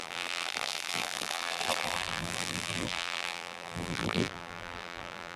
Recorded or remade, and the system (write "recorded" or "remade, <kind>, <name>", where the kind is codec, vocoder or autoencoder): remade, vocoder, BigVGAN v2